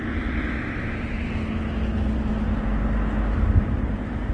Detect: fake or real real